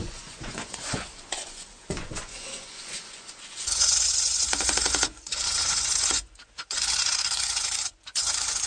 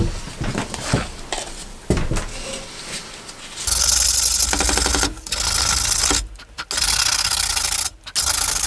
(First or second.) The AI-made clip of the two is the first